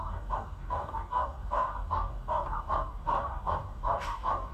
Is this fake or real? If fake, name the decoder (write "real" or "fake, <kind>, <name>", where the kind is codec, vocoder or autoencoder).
fake, codec, DAC